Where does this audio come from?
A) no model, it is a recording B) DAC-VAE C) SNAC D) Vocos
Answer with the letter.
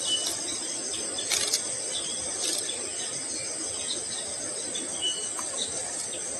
A